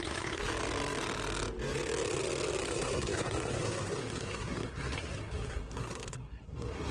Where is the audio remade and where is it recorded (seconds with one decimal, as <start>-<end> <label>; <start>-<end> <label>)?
0.0-0.5 remade; 0.5-2.6 recorded; 2.6-6.9 remade